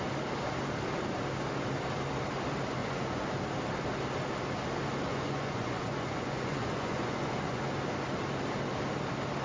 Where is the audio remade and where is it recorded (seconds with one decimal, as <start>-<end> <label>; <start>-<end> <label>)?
0.0-2.8 recorded; 2.8-3.3 remade; 3.3-5.1 recorded; 5.1-7.6 remade; 7.6-9.4 recorded